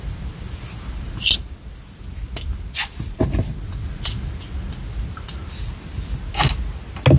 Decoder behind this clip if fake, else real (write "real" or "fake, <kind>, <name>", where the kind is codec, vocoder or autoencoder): real